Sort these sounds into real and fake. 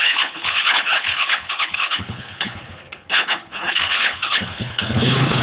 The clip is fake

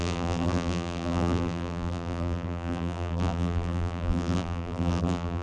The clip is fake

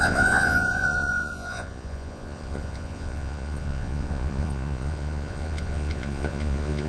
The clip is fake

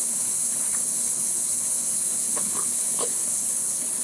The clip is fake